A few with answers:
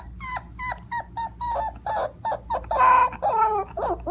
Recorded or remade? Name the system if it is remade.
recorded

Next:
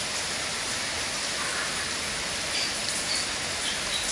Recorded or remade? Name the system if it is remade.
recorded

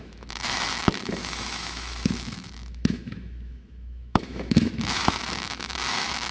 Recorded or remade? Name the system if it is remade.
remade, autoencoder, DAC-VAE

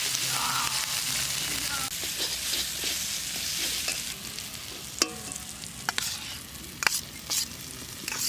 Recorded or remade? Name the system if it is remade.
recorded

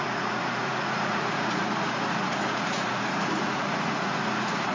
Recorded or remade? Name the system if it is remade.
remade, vocoder, Vocos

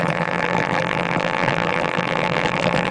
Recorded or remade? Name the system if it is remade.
remade, vocoder, BigVGAN v2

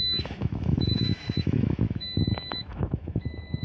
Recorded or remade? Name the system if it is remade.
remade, autoencoder, DAC-VAE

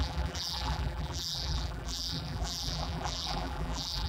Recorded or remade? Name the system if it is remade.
remade, vocoder, BigVGAN v2